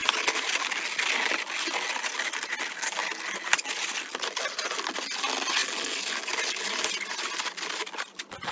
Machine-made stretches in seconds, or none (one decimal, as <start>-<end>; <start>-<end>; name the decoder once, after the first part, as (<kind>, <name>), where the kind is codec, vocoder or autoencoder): none